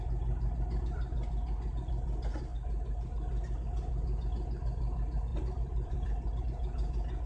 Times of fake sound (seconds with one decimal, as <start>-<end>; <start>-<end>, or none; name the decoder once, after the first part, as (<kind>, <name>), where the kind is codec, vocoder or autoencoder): 5.3-6.4 (vocoder, BigVGAN v2)